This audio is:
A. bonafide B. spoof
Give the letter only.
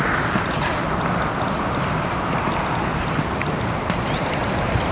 A